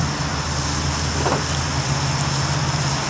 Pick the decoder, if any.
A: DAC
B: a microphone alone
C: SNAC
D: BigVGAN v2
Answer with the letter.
B